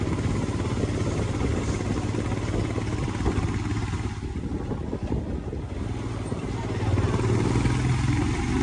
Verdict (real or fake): real